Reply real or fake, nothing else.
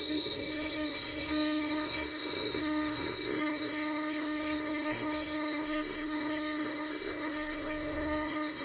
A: fake